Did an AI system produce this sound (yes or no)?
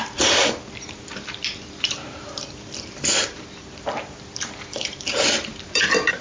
yes